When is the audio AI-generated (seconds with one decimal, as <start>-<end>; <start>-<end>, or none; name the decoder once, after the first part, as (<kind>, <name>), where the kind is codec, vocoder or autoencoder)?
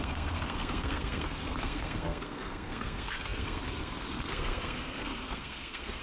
0.0-6.0 (codec, SNAC)